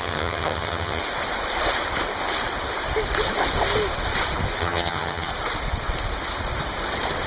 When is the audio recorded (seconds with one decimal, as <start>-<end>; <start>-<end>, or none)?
1.0-4.6; 5.3-7.3